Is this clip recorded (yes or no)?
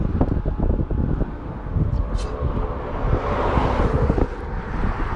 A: yes